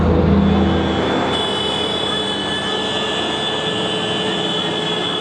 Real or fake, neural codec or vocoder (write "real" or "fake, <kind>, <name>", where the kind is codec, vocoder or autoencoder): real